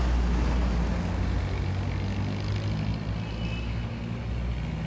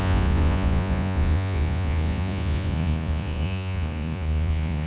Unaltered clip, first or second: first